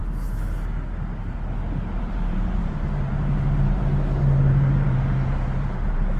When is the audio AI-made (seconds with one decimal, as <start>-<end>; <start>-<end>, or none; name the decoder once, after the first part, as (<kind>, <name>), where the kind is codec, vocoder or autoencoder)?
2.0-3.9 (vocoder, BigVGAN v2); 4.5-6.2